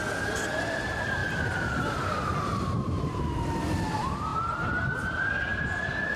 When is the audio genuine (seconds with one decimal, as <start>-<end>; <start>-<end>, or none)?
0.0-0.6